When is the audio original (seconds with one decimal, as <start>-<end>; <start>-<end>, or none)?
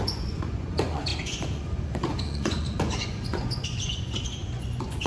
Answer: none